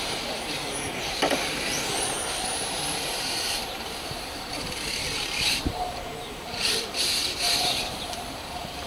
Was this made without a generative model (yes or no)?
no